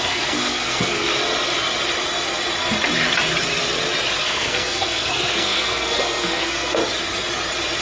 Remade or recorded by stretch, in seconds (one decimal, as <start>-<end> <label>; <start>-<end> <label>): 0.0-1.1 remade; 1.1-4.2 recorded; 4.2-6.8 remade; 6.8-7.8 recorded